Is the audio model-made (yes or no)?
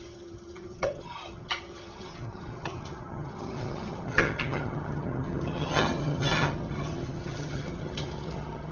yes